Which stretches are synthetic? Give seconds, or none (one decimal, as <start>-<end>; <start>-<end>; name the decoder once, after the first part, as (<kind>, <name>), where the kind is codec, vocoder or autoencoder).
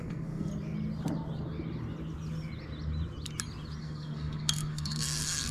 0.0-0.5 (codec, SNAC); 3.8-5.5